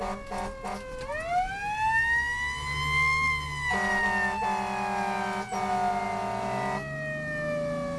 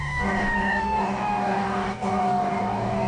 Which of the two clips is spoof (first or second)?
second